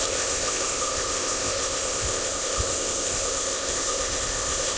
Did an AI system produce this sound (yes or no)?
yes